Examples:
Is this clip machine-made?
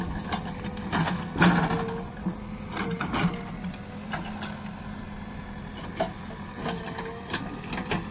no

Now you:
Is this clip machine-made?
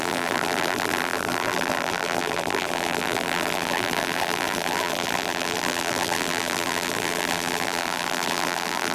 yes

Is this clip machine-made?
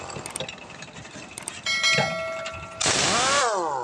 no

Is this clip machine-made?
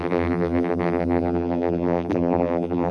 yes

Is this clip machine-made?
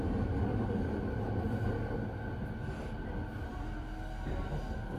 no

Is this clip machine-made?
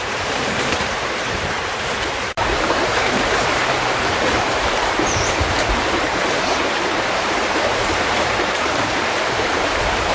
yes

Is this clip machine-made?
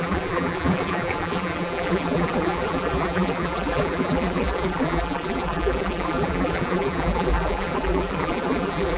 yes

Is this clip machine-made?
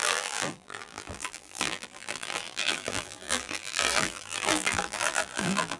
yes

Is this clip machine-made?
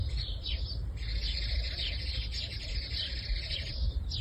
yes